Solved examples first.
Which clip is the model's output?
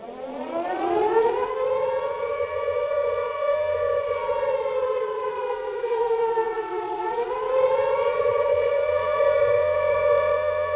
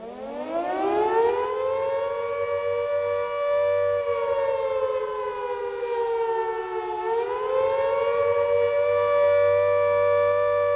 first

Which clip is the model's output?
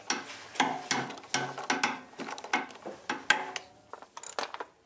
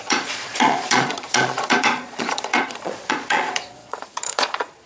second